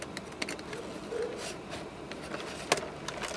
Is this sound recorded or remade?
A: recorded